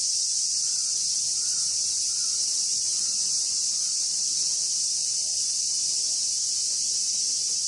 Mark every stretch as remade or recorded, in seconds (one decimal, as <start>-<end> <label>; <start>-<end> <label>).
0.0-4.0 remade; 4.0-4.8 recorded; 4.8-7.7 remade